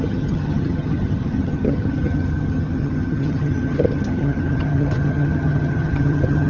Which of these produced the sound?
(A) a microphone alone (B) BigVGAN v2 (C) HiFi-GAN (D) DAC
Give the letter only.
C